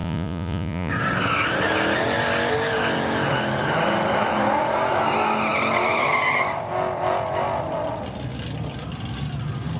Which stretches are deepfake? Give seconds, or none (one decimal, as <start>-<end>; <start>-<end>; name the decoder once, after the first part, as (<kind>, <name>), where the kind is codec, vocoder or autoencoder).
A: 0.0-0.9 (vocoder, Vocos)